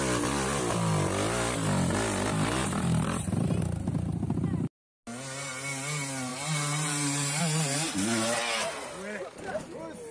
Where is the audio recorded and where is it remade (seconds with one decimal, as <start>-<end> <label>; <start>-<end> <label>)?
0.0-2.6 recorded; 2.6-3.6 remade; 3.6-6.3 recorded; 6.3-7.4 remade; 7.4-10.1 recorded